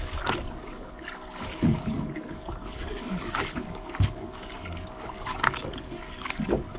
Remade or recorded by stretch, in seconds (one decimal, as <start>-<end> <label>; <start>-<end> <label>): 0.0-6.8 remade